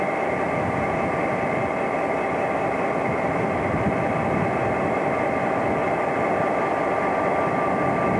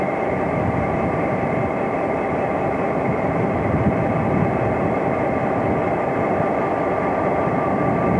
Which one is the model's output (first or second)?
second